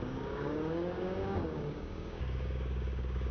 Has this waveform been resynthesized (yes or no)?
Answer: yes